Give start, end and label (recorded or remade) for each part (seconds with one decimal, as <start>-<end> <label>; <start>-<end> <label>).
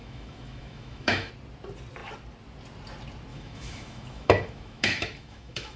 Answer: 0.0-1.3 remade; 1.3-3.3 recorded; 3.3-5.8 remade